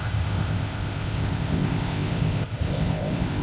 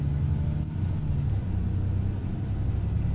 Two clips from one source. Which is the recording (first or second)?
second